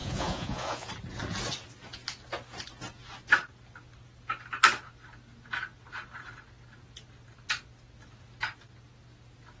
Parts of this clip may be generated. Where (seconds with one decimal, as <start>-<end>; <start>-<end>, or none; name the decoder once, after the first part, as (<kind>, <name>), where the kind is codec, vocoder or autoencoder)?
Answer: 0.0-0.9 (vocoder, Vocos)